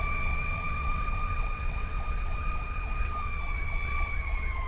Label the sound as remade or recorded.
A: remade